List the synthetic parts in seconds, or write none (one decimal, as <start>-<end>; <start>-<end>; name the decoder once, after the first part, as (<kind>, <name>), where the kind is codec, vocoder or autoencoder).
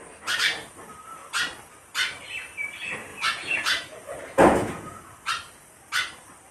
3.1-5.0 (vocoder, Vocos)